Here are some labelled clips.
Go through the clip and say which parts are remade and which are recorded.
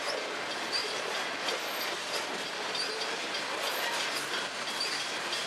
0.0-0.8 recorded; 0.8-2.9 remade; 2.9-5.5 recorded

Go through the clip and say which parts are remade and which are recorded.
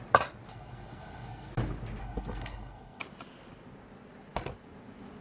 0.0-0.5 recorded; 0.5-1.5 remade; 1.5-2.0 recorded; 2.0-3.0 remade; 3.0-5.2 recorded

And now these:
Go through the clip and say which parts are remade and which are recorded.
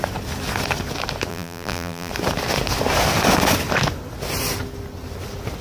0.0-1.3 recorded; 1.3-2.1 remade; 2.1-5.6 recorded